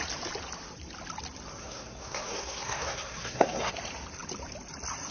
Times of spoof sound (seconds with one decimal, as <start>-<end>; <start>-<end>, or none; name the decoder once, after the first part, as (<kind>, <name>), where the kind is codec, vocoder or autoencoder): 1.6-3.7 (codec, SNAC)